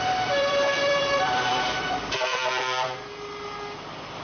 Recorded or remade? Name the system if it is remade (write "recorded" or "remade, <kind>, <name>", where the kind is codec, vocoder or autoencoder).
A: remade, vocoder, BigVGAN v2